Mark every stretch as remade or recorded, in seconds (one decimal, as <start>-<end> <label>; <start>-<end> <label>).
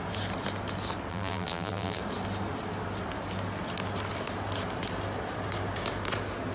0.0-1.1 recorded; 1.1-2.0 remade; 2.0-6.5 recorded